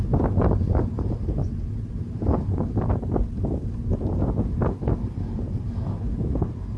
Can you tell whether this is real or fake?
real